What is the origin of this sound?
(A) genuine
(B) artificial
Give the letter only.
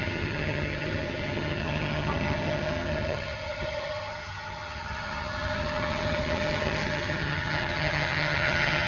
B